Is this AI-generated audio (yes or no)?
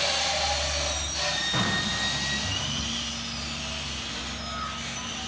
no